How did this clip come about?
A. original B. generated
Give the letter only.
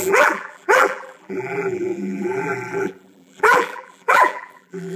B